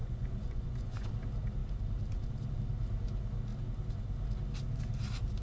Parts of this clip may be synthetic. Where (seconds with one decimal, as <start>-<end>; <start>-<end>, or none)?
0.0-1.1